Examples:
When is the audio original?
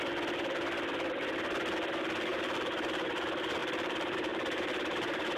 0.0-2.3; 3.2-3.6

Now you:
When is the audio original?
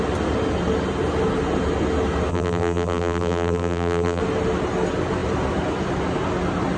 0.0-2.3; 4.2-6.8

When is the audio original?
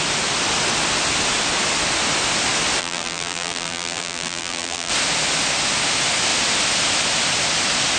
0.0-2.8; 4.9-8.0